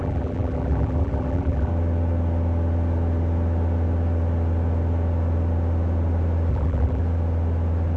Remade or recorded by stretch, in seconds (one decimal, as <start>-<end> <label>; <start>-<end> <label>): 0.0-1.7 remade; 1.7-6.5 recorded; 6.5-7.0 remade; 7.0-8.0 recorded